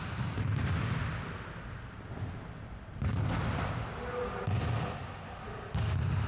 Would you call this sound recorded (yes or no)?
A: yes